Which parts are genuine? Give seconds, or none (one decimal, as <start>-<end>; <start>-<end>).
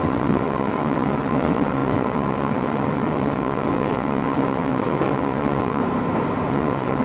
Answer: 5.8-6.5